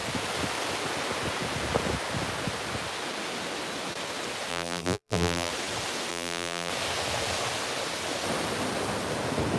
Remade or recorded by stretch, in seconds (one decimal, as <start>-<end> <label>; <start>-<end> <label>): 0.0-4.5 recorded; 4.5-5.5 remade; 5.5-6.1 recorded; 6.1-6.7 remade; 6.7-9.6 recorded